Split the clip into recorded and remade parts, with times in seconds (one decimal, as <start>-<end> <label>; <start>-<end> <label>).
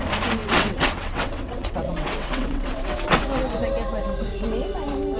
0.0-0.4 recorded; 0.4-3.2 remade; 3.2-5.2 recorded